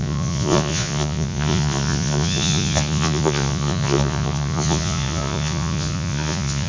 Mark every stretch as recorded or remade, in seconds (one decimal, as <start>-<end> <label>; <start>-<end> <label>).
0.0-6.7 remade